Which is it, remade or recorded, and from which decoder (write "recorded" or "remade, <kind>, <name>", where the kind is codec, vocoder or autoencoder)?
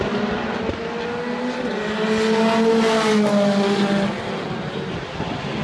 recorded